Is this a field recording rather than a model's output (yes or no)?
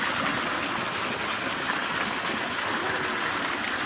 yes